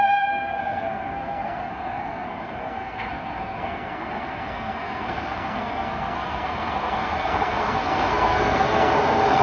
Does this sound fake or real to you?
fake